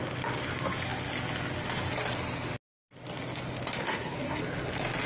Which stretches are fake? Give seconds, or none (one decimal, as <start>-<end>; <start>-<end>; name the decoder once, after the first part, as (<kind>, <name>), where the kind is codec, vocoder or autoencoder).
3.8-4.4 (codec, SNAC)